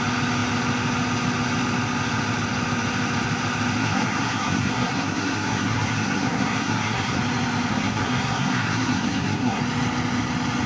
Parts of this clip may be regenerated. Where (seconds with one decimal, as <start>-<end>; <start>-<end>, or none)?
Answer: 3.8-7.2; 7.7-9.6